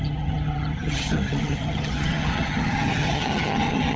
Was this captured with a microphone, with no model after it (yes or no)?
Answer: no